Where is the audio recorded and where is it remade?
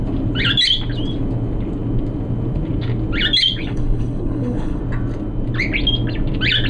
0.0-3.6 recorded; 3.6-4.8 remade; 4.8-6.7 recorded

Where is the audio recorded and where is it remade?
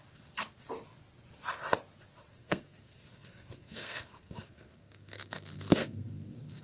0.0-2.3 recorded; 2.3-6.6 remade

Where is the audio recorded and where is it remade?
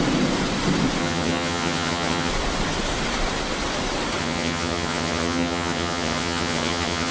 0.0-1.0 recorded; 1.0-2.3 remade; 2.3-4.2 recorded; 4.2-7.1 remade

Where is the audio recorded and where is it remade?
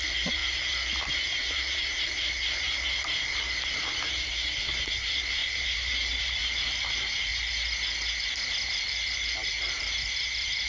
0.0-0.4 remade; 0.4-1.1 recorded; 1.1-7.3 remade; 7.3-8.7 recorded; 8.7-10.7 remade